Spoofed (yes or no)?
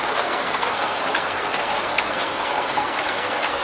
yes